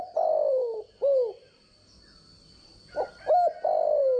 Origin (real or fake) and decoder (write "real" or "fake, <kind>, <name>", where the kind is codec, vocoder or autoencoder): real